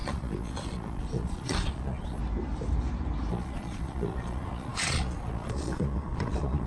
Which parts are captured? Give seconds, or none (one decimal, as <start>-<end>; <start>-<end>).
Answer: 2.2-3.3